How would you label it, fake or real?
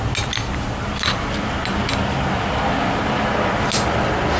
real